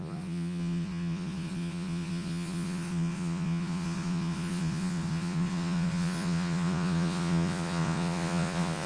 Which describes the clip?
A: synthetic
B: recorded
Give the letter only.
A